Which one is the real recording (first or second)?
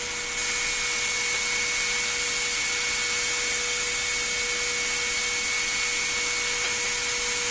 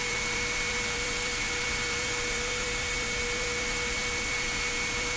first